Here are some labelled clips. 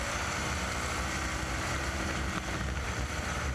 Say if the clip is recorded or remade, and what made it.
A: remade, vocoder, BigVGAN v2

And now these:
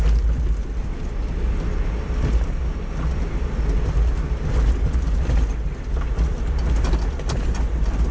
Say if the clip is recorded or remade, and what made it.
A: recorded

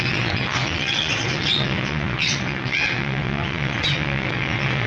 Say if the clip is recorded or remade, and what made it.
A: remade, vocoder, WaveNeXt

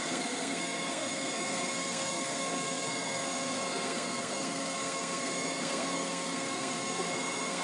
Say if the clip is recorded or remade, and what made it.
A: remade, codec, SNAC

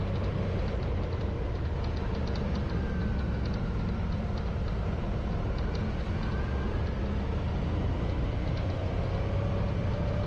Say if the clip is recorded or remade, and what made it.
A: recorded